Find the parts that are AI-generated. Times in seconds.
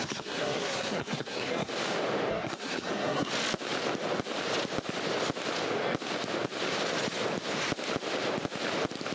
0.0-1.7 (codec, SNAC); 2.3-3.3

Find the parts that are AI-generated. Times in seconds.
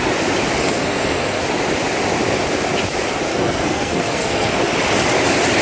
0.6-1.4 (codec, SNAC); 3.3-4.6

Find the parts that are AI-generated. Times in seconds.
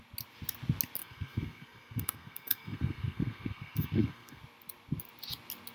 1.0-4.4 (codec, SNAC)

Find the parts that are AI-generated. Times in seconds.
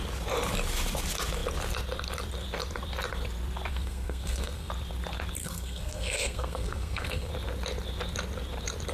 3.7-4.7 (codec, SNAC); 5.4-7.3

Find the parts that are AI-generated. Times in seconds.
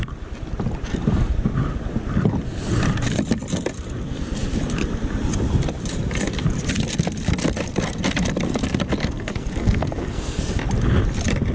9.0-10.5 (codec, SNAC)